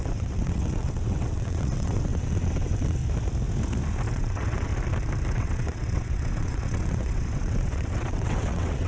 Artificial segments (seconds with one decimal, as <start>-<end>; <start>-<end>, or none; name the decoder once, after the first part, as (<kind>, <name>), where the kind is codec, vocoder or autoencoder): 0.0-3.0 (vocoder, WaveNeXt); 4.1-4.7; 5.3-8.9